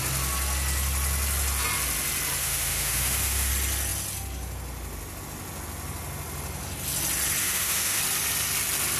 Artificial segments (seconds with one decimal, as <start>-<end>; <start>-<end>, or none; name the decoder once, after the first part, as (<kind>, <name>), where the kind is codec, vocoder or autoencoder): 2.4-3.5 (autoencoder, DAC-VAE); 7.4-8.0